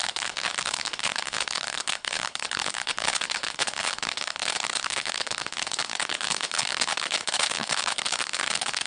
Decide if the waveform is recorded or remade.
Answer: remade